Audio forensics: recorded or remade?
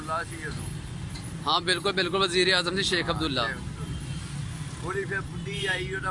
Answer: recorded